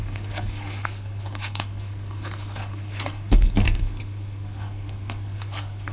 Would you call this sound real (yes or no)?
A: no